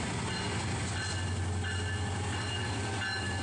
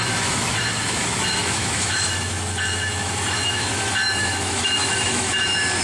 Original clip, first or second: first